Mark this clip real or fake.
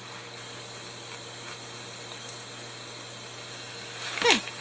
real